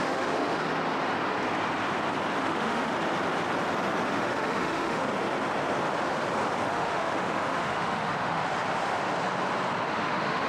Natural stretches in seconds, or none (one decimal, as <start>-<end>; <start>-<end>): 0.6-2.4; 2.9-4.1; 5.1-6.7; 8.4-9.9